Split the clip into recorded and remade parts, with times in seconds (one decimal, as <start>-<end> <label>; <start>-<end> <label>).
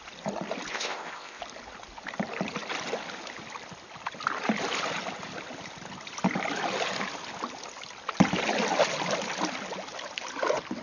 0.0-0.7 recorded; 0.7-1.4 remade; 1.4-10.8 recorded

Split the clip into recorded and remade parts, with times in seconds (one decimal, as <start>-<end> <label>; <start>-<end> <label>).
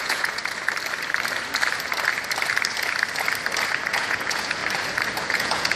0.0-0.4 remade; 0.4-3.9 recorded; 3.9-4.6 remade; 4.6-5.2 recorded; 5.2-5.8 remade